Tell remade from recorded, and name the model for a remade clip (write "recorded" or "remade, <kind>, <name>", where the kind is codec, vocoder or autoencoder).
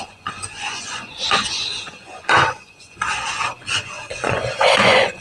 remade, vocoder, Vocos